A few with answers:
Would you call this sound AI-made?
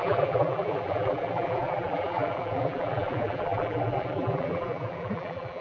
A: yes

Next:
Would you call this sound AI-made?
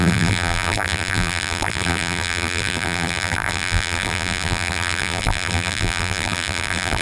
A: yes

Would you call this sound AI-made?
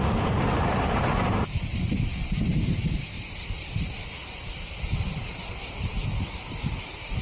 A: yes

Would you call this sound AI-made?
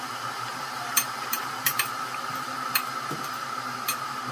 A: yes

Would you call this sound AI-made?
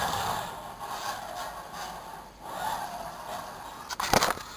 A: no